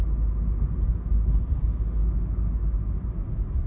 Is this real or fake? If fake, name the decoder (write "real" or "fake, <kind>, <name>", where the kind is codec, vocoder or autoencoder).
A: real